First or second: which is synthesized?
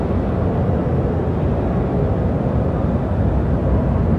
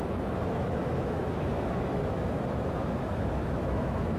second